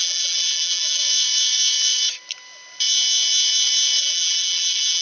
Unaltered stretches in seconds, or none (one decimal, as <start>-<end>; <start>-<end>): 1.0-4.0